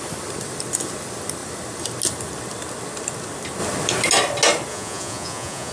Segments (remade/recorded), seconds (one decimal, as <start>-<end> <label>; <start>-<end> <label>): 0.0-4.7 recorded; 4.7-5.7 remade